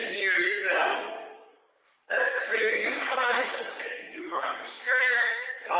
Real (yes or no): no